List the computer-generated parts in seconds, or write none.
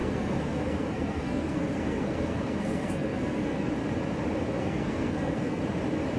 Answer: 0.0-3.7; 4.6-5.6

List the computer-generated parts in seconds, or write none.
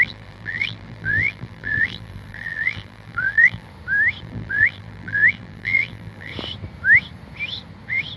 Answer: 0.0-3.7; 4.2-6.3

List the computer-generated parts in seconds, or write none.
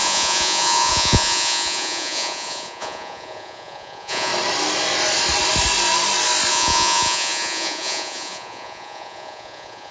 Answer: 0.0-4.3; 6.5-9.9